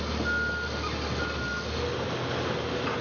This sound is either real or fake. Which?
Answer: real